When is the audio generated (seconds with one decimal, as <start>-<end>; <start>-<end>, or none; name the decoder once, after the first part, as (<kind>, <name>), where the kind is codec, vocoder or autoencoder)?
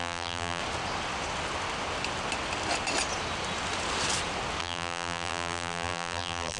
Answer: 0.0-0.6 (vocoder, BigVGAN v2); 4.6-6.6